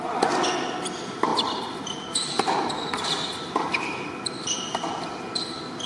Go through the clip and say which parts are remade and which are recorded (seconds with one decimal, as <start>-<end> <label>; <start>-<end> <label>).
0.0-1.3 recorded; 1.3-3.5 remade; 3.5-5.9 recorded